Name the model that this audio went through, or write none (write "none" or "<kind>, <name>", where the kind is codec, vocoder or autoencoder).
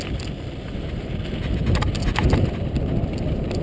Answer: none